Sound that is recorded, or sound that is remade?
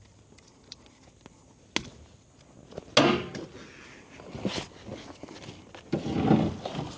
recorded